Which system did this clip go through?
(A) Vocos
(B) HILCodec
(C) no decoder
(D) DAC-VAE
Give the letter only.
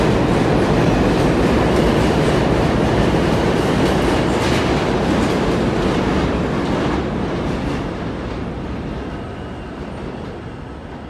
C